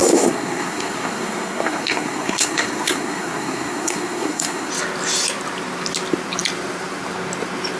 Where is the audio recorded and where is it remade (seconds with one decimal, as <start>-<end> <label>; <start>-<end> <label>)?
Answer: 0.0-4.7 remade; 4.7-7.8 recorded